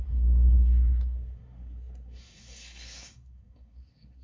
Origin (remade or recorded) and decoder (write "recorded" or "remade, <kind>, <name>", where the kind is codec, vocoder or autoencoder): remade, codec, SNAC